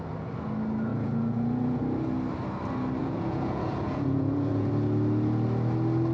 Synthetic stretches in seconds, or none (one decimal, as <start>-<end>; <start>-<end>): 0.9-1.8; 3.0-4.7